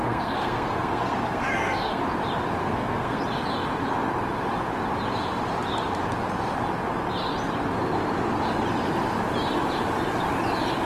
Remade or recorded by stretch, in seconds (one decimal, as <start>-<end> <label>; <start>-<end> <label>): 0.0-2.0 remade; 2.0-2.6 recorded; 2.6-3.2 remade; 3.2-10.8 recorded